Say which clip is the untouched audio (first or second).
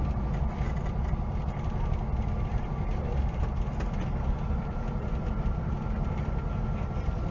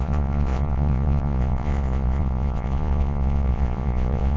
first